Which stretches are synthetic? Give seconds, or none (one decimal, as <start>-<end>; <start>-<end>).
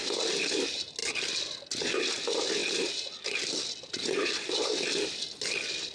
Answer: none